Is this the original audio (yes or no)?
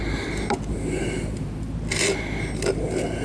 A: yes